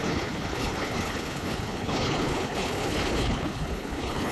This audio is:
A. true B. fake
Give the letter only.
B